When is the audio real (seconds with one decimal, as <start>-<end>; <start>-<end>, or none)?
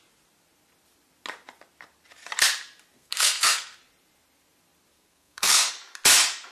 0.0-2.9; 3.8-4.9; 5.7-6.5